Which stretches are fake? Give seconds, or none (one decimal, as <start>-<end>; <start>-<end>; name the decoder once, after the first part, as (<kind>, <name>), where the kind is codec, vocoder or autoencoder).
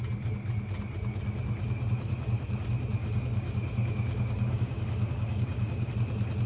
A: 3.0-5.9 (codec, DAC)